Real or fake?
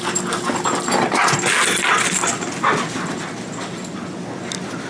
real